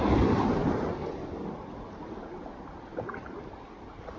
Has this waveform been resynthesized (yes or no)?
no